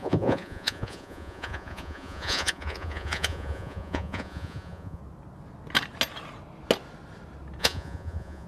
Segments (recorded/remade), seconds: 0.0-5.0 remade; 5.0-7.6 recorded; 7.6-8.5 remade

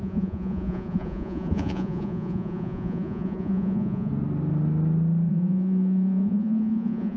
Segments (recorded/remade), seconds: 0.0-4.1 remade; 4.1-5.3 recorded; 5.3-7.2 remade